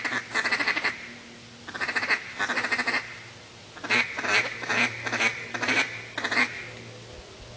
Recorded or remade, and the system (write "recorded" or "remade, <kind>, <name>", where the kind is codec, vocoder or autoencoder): recorded